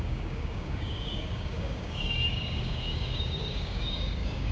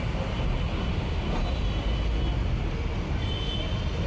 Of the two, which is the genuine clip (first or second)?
second